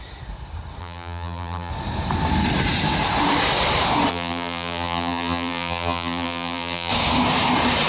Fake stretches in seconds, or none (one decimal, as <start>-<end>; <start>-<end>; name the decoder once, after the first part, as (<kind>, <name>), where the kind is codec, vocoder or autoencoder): 0.8-1.7 (vocoder, BigVGAN v2); 4.1-6.9